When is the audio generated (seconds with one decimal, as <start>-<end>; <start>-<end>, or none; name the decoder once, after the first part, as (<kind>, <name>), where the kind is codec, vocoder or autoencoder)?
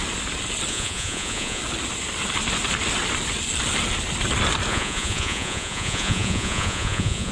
0.7-1.6 (vocoder, Vocos); 4.7-7.3